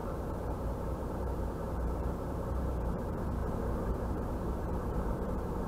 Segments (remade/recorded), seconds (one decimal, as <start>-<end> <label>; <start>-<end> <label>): 0.0-3.4 remade; 3.4-3.9 recorded; 3.9-5.7 remade